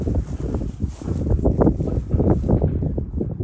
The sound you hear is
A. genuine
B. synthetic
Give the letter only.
A